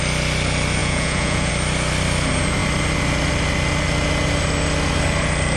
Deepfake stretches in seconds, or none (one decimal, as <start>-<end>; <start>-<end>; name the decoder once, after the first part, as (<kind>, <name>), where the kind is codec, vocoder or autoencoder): 0.8-1.5 (vocoder, Vocos)